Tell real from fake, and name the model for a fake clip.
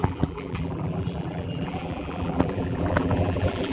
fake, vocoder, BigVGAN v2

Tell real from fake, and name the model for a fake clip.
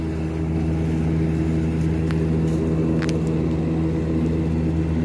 real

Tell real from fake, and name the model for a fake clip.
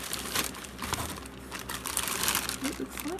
real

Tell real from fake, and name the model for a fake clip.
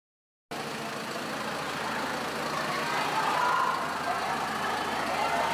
real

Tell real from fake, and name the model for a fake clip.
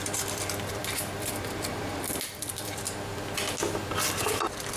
fake, vocoder, BigVGAN v2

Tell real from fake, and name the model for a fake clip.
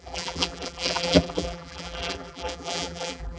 fake, vocoder, BigVGAN v2